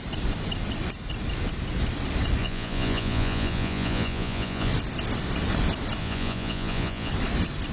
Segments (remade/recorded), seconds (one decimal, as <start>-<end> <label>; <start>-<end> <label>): 0.0-2.4 recorded; 2.4-4.7 remade; 4.7-6.0 recorded; 6.0-7.1 remade; 7.1-7.7 recorded